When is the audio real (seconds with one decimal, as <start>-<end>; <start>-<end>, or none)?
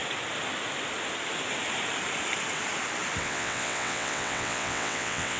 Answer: 0.0-3.2